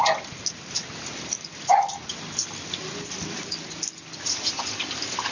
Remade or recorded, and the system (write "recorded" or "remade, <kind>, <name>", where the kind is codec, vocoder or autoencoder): recorded